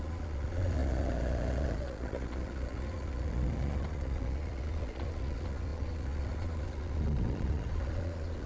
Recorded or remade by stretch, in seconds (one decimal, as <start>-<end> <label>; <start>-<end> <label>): 0.0-8.5 remade